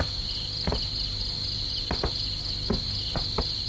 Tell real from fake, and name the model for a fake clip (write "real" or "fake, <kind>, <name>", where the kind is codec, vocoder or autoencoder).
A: real